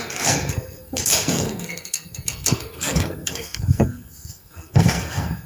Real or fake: fake